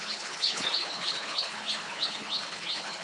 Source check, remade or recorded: remade